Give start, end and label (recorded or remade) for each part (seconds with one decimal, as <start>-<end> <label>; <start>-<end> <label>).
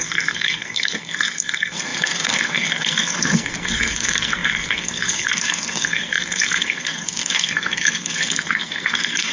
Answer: 0.0-9.3 remade